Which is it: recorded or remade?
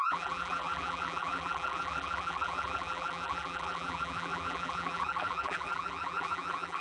remade